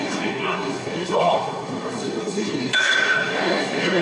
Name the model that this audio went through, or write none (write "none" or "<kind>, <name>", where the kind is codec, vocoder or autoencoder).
codec, SNAC